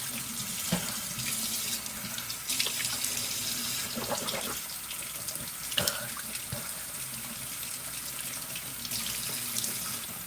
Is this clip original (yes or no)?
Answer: yes